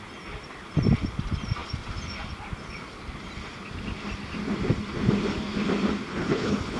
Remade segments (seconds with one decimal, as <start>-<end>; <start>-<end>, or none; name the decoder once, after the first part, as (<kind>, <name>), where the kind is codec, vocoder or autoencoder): 6.1-6.8 (codec, HILCodec)